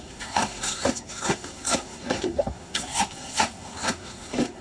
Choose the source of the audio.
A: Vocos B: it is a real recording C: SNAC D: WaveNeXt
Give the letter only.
C